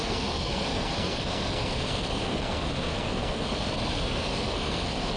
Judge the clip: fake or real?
fake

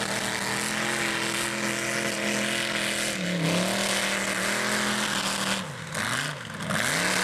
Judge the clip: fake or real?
real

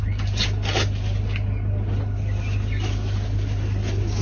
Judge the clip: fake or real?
real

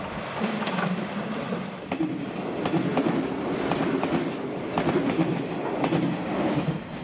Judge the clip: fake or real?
real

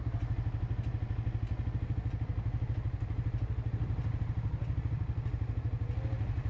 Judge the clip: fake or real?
real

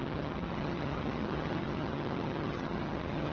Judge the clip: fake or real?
fake